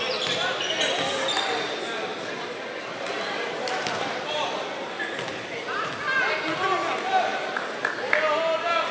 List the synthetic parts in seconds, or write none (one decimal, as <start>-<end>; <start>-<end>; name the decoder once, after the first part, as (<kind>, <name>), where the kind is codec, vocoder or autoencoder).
2.1-5.9 (vocoder, BigVGAN v2)